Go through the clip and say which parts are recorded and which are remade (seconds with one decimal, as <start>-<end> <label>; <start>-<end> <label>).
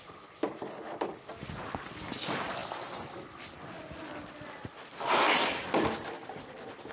0.0-6.9 recorded